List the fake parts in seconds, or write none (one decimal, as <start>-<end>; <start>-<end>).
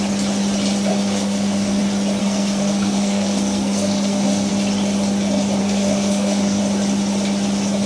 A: 0.9-1.8; 2.2-4.5; 5.6-6.6